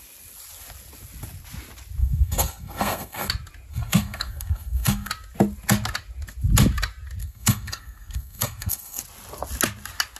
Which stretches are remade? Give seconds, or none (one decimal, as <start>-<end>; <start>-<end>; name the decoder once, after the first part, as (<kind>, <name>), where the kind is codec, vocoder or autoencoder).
2.0-3.3 (codec, SNAC); 3.7-5.1; 7.2-9.0